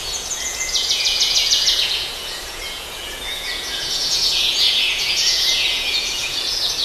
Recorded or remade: remade